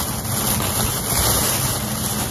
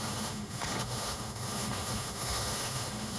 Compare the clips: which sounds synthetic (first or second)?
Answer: second